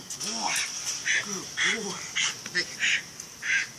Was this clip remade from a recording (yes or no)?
no